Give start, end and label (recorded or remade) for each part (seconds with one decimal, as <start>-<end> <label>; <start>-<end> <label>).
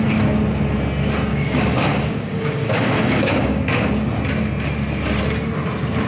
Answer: 0.0-1.3 recorded; 1.3-3.6 remade; 3.6-6.1 recorded